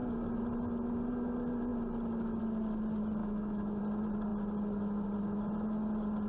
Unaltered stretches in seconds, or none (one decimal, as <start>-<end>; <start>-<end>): 0.0-3.2; 3.8-6.3